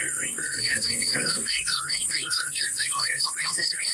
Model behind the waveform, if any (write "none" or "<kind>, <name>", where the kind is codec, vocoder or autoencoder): codec, SNAC